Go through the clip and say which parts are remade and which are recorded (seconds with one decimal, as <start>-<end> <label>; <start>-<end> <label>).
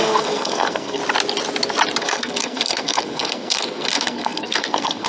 0.0-1.0 remade; 1.0-2.0 recorded; 2.0-5.1 remade